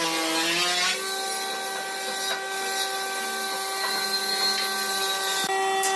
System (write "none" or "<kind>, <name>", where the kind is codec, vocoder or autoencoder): none